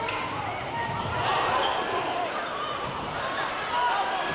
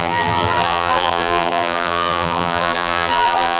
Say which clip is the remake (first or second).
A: second